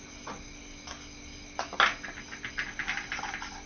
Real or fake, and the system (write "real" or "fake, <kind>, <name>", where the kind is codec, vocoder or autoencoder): real